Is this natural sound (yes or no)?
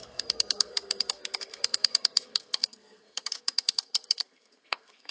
no